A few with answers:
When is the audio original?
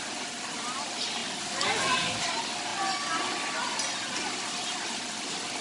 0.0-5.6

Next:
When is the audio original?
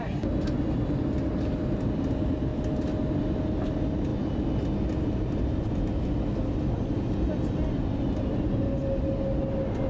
0.0-9.9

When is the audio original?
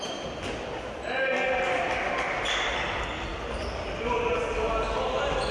0.0-5.5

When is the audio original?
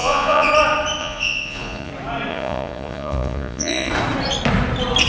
0.5-1.0; 1.9-2.3; 3.9-5.1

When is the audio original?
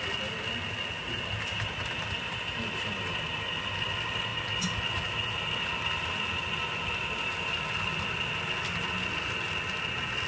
0.0-10.3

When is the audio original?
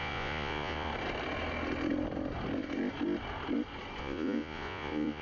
0.9-4.0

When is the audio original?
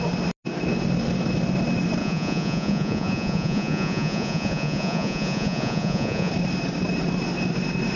0.0-2.0; 6.3-8.0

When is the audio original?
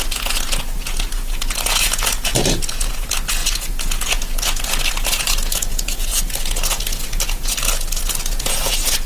none